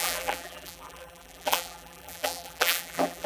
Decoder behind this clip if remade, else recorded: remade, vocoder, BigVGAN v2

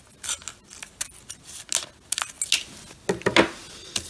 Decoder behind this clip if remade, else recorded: recorded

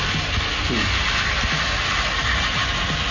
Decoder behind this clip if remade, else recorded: recorded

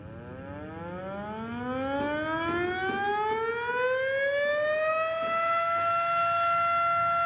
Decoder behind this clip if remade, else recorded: recorded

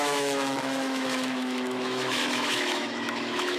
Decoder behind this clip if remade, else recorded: remade, autoencoder, DAC-VAE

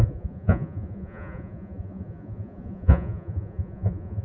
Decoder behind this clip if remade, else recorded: remade, vocoder, Vocos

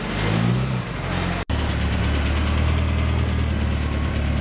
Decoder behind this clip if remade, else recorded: recorded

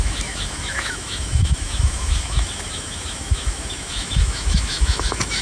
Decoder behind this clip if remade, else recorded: remade, autoencoder, DAC-VAE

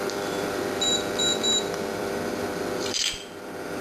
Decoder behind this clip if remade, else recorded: remade, vocoder, BigVGAN v2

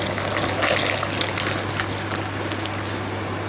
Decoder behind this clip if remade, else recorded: recorded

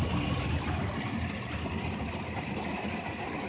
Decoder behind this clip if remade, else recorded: recorded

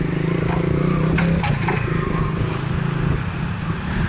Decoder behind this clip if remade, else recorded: recorded